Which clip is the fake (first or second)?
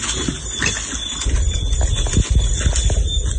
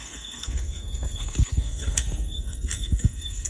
second